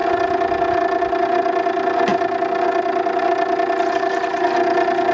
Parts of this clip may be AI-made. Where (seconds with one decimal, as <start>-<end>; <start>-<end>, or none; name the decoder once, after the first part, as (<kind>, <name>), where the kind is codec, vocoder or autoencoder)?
none